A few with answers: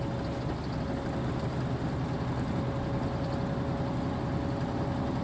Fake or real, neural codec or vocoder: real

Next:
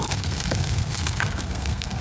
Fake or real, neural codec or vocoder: fake, codec, SNAC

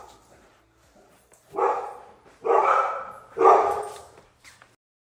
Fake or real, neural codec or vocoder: fake, vocoder, BigVGAN v2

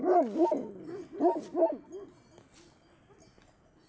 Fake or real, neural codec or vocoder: real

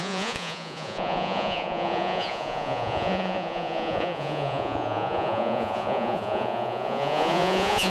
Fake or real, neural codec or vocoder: fake, vocoder, Vocos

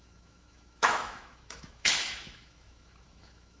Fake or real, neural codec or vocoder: fake, autoencoder, DAC-VAE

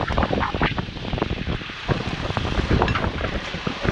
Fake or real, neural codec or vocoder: fake, vocoder, BigVGAN v2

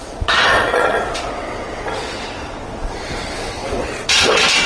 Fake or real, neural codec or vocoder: fake, vocoder, WaveNeXt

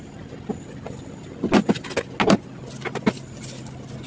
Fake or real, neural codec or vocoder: real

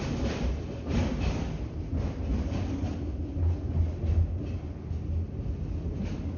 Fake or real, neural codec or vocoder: real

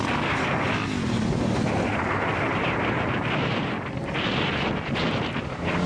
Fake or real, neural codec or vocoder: real